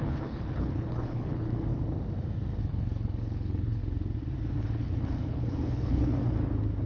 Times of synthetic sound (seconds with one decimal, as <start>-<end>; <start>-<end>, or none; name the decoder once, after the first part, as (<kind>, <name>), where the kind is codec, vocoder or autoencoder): 0.0-1.7 (codec, HILCodec); 2.6-3.8; 4.6-6.2